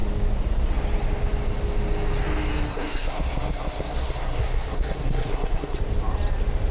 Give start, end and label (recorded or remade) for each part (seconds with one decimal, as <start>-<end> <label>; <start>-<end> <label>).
0.0-2.7 recorded; 2.7-5.8 remade; 5.8-6.7 recorded